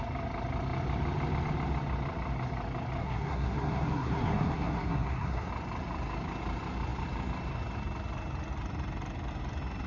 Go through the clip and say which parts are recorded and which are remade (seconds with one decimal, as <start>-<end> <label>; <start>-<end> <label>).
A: 0.0-3.0 recorded; 3.0-5.5 remade; 5.5-9.9 recorded